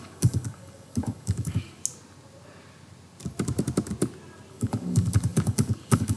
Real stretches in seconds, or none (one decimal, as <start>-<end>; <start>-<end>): 1.8-4.5